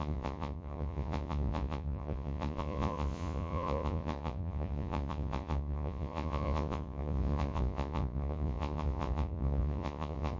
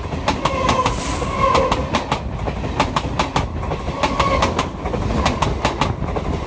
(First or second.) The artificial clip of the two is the first